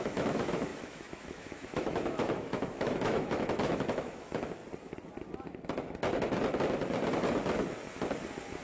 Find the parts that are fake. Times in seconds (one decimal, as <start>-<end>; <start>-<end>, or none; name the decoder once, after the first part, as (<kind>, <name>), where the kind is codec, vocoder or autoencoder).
0.0-4.6 (autoencoder, DAC-VAE)